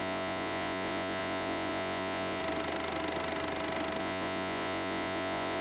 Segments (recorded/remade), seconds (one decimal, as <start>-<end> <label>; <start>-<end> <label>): 0.0-2.4 remade; 2.4-4.0 recorded; 4.0-5.6 remade